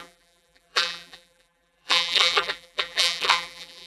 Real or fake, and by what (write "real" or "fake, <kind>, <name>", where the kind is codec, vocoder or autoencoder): fake, vocoder, BigVGAN v2